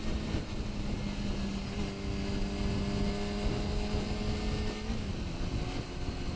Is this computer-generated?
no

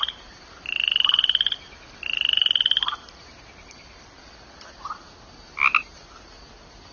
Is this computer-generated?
no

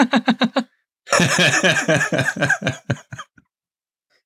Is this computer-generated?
no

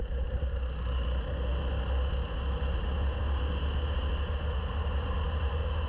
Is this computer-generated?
no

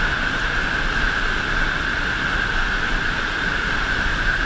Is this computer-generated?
no